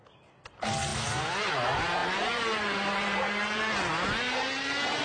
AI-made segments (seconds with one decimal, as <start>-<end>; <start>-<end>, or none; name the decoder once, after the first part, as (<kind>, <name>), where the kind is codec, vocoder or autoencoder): 2.0-3.6 (vocoder, BigVGAN v2)